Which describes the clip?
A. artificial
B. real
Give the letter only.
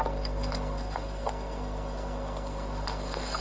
A